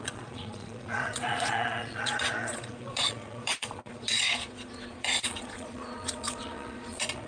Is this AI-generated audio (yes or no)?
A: yes